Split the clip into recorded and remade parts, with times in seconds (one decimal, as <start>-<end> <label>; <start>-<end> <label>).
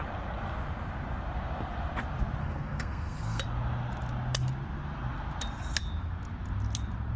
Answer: 0.0-2.4 recorded; 2.4-3.4 remade; 3.4-7.2 recorded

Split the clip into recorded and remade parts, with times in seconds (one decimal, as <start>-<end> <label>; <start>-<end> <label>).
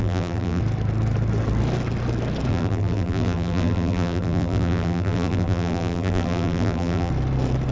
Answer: 0.0-0.6 remade; 0.6-2.5 recorded; 2.5-7.1 remade; 7.1-7.7 recorded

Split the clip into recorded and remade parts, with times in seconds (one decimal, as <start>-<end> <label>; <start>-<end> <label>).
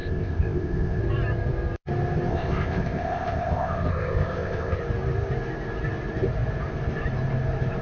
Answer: 0.0-1.0 remade; 1.0-2.3 recorded; 2.3-4.8 remade; 4.8-7.8 recorded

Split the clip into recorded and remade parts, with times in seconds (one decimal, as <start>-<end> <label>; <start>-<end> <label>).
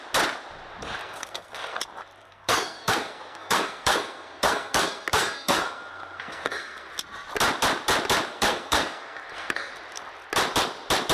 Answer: 0.0-1.0 recorded; 1.0-1.8 remade; 1.8-2.2 recorded; 2.2-6.9 remade; 6.9-8.3 recorded; 8.3-9.7 remade; 9.7-11.1 recorded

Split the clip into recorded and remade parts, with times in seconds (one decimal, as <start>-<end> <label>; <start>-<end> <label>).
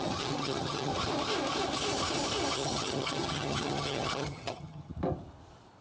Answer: 0.0-0.9 remade; 0.9-2.5 recorded; 2.5-4.9 remade; 4.9-5.8 recorded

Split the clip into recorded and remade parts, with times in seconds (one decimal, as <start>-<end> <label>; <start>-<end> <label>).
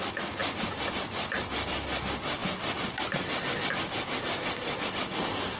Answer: 0.0-5.6 recorded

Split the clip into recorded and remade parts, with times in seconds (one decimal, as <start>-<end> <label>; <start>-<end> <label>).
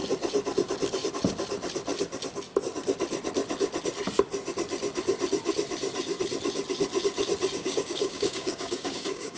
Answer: 0.0-7.6 recorded; 7.6-9.4 remade